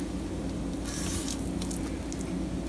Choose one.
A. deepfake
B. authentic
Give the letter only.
B